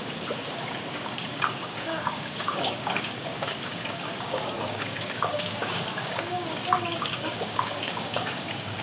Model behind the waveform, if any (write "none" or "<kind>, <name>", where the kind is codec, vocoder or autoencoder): codec, DAC